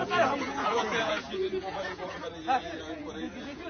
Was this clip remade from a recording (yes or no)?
yes